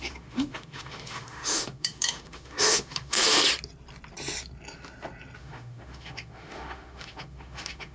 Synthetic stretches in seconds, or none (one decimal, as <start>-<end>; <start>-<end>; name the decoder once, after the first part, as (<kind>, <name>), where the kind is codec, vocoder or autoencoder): 0.0-3.4 (autoencoder, DAC-VAE); 5.4-7.9